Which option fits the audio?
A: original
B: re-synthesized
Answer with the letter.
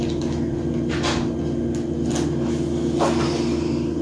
A